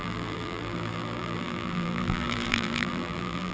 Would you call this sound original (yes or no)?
no